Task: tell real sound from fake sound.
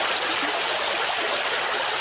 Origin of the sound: fake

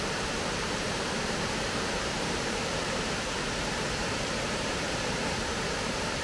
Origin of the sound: fake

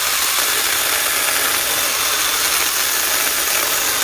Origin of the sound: real